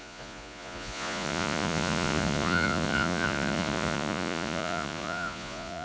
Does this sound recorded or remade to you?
remade